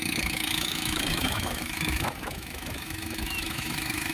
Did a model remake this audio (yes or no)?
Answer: yes